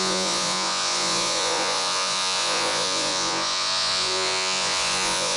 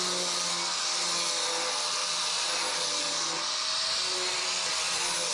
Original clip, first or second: second